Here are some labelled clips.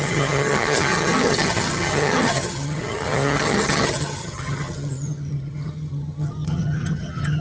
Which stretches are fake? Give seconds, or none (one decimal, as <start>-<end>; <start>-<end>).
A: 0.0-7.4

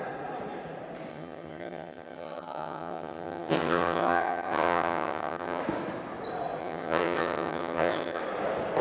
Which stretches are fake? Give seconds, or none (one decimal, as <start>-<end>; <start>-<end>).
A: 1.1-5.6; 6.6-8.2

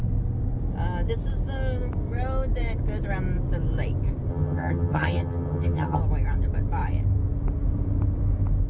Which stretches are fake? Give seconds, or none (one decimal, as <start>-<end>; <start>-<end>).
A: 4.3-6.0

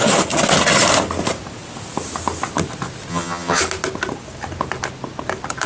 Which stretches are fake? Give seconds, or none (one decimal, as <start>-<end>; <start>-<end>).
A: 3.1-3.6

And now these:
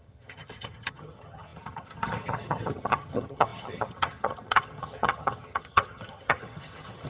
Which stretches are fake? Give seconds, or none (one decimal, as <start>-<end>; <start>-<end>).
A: 0.0-7.1